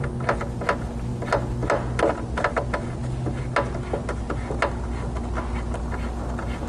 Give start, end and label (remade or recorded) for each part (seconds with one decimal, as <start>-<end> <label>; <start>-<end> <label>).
0.0-6.7 recorded